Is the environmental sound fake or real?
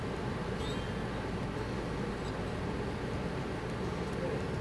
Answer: real